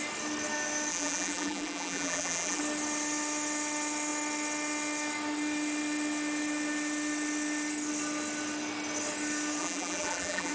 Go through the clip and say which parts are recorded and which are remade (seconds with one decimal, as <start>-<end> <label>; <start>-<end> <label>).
0.0-0.9 recorded; 0.9-2.6 remade; 2.6-9.6 recorded; 9.6-10.5 remade